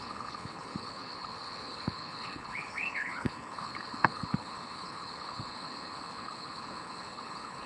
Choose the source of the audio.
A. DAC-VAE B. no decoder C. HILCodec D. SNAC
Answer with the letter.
C